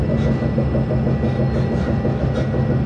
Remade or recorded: recorded